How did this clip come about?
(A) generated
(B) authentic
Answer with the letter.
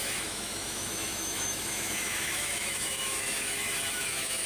A